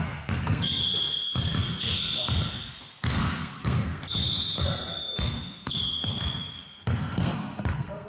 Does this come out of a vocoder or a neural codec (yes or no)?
yes